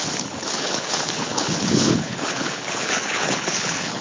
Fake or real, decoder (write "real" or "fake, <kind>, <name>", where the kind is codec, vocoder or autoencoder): fake, codec, HILCodec